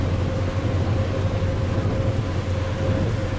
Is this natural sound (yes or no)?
yes